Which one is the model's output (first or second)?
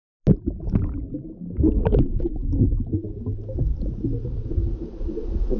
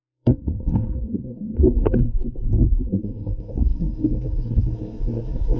second